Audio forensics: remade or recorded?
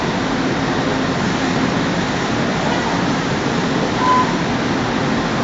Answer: recorded